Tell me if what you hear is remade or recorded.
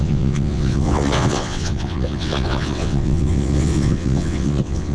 remade